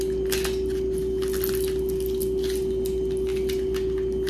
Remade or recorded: recorded